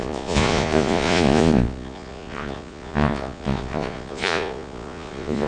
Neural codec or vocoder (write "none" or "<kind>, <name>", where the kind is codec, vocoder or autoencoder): vocoder, Vocos